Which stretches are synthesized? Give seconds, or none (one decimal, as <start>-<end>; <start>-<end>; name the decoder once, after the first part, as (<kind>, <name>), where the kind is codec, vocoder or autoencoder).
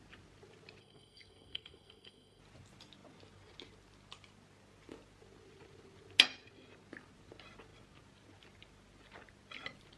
0.8-2.4 (codec, SNAC)